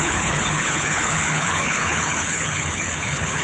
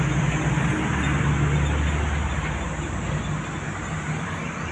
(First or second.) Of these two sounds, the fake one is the first